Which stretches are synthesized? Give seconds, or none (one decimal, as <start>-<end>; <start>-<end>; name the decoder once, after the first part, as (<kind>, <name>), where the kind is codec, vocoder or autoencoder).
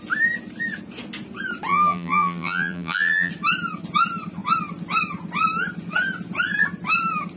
1.7-3.3 (vocoder, BigVGAN v2)